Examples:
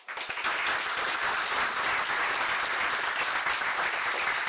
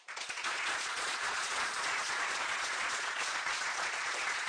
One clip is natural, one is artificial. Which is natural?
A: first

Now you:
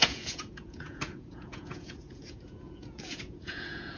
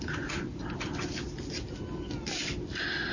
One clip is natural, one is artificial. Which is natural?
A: second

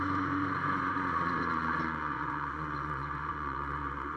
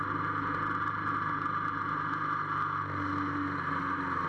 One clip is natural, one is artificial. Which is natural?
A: second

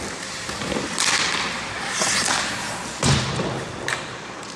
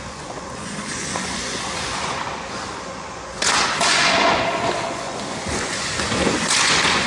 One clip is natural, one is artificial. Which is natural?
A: first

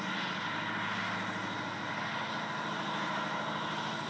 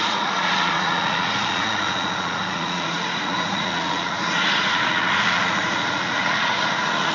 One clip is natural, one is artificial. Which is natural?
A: first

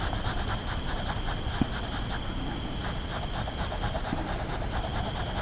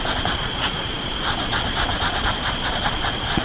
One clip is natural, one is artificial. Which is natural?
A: first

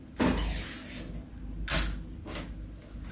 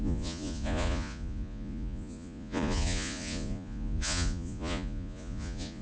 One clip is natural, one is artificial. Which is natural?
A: first